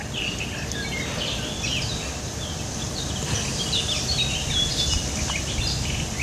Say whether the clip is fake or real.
real